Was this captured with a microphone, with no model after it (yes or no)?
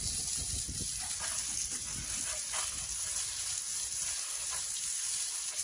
yes